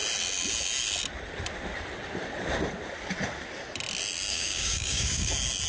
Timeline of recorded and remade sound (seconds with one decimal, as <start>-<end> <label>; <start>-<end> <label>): 0.0-4.3 recorded; 4.3-5.3 remade; 5.3-5.7 recorded